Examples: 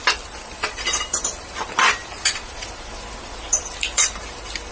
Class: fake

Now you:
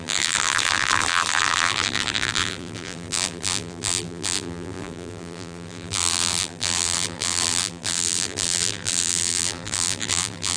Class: fake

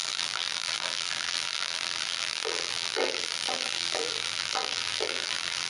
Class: fake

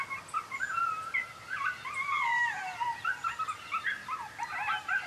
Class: real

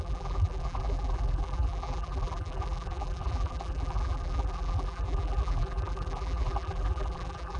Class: fake